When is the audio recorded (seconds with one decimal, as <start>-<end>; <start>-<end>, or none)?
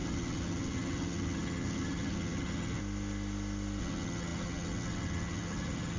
2.8-3.8